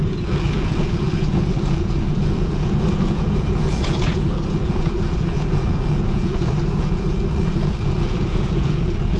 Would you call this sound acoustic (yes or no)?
no